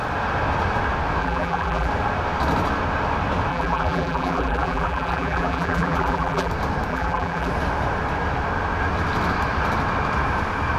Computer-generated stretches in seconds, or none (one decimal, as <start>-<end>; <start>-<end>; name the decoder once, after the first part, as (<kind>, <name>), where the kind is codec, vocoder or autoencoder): 1.2-1.9 (vocoder, BigVGAN v2); 3.5-6.5; 6.9-7.5